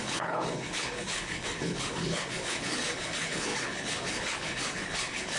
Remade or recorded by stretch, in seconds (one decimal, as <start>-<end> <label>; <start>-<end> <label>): 0.0-5.4 remade